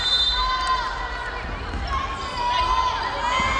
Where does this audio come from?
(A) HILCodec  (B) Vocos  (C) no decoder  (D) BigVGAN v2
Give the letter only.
C